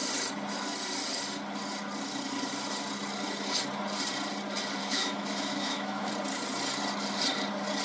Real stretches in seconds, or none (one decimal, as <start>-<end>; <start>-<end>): 0.0-4.8; 6.1-7.8

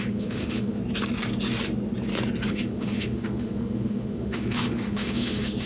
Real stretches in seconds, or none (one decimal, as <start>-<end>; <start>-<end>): 0.8-2.5

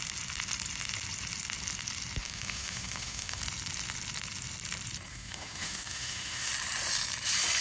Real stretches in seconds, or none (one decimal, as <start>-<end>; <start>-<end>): 0.0-2.2; 3.4-5.1; 6.5-7.6

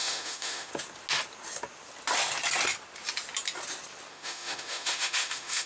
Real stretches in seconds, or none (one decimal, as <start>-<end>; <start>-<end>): 0.7-4.1

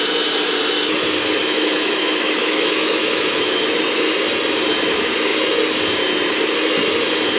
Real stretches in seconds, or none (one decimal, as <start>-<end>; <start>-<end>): 0.0-1.4; 3.6-7.4